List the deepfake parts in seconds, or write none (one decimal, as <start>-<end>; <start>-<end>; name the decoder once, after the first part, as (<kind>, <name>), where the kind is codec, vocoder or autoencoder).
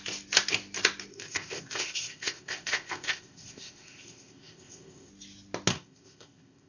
1.1-5.1 (codec, ZipCodec); 5.7-6.7